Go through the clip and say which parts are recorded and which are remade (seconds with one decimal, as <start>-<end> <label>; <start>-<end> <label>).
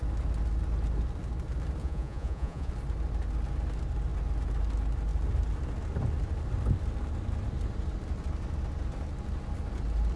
0.0-1.8 recorded; 1.8-2.7 remade; 2.7-10.2 recorded